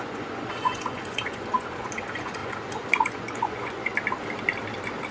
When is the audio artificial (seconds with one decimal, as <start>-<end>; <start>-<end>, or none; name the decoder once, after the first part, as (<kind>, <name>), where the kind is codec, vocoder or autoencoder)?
0.0-3.9 (vocoder, Vocos)